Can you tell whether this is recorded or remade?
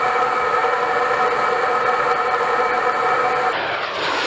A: recorded